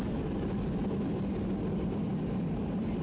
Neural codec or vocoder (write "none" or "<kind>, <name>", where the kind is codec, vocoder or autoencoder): none